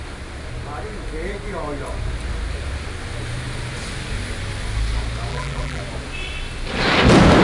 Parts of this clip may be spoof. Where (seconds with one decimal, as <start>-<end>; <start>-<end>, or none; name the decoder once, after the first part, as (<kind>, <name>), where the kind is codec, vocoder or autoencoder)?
5.3-5.8 (vocoder, BigVGAN v2)